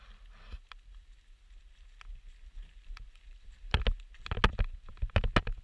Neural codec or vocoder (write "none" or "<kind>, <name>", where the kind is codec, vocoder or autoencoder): none